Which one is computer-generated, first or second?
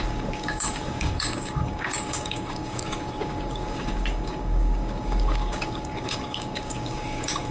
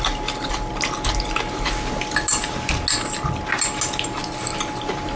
first